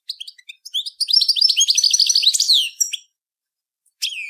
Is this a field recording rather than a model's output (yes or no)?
yes